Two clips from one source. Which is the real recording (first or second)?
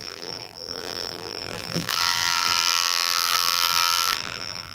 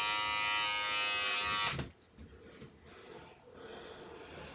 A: second